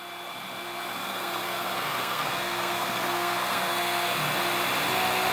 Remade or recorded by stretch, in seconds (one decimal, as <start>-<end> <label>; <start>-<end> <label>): 0.0-1.0 recorded; 1.0-4.2 remade; 4.2-5.3 recorded